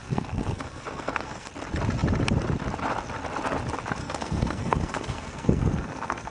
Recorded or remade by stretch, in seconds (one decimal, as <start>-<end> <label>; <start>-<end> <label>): 0.0-1.5 remade; 1.5-4.0 recorded; 4.0-6.3 remade